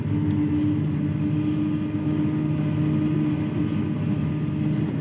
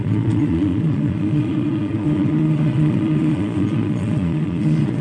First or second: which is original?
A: first